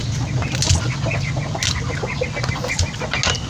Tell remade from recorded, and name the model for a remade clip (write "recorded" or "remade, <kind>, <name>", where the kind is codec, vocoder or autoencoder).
recorded